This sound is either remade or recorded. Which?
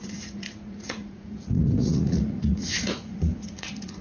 remade